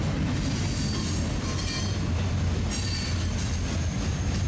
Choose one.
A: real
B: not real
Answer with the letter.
A